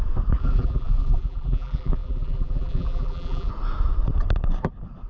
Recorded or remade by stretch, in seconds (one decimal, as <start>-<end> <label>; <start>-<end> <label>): 0.0-0.4 recorded; 0.4-3.5 remade; 3.5-5.1 recorded